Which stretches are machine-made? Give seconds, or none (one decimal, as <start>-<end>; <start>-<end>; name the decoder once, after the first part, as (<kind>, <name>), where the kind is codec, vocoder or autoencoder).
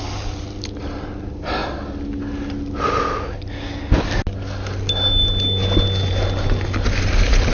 none